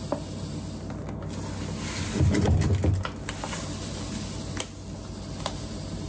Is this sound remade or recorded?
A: recorded